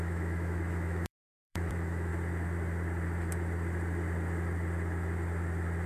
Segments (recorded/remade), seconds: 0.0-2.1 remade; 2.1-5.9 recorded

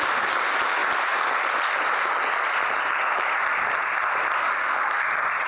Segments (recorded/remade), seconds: 0.0-4.4 recorded; 4.4-5.0 remade; 5.0-5.5 recorded

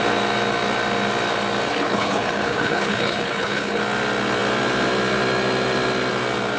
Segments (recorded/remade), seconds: 0.0-1.7 recorded; 1.7-3.8 remade; 3.8-6.6 recorded

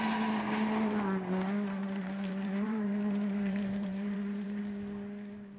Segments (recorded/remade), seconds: 0.0-1.8 recorded; 1.8-4.6 remade; 4.6-5.6 recorded

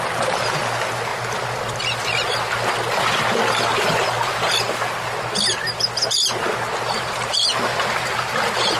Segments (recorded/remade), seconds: 0.0-1.1 recorded; 1.1-1.8 remade; 1.8-8.8 recorded

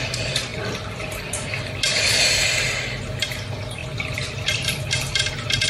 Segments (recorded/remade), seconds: 0.0-3.8 recorded; 3.8-5.7 remade

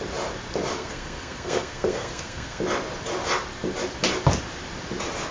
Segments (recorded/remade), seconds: 0.0-0.7 recorded; 0.7-2.6 remade; 2.6-5.3 recorded

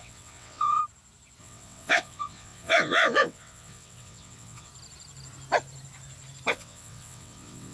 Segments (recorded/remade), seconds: 0.0-0.8 remade; 0.8-1.4 recorded; 1.4-4.7 remade; 4.7-6.5 recorded; 6.5-7.7 remade